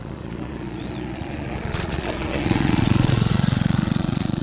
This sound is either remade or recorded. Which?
remade